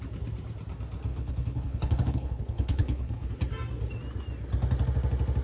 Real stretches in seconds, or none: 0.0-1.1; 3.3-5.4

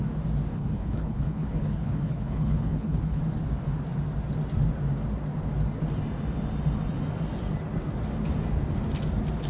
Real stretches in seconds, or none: 0.0-0.5; 3.2-9.5

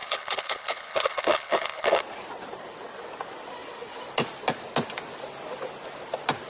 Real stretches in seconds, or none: 2.0-6.5

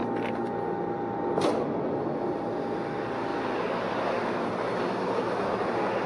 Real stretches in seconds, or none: 0.0-6.1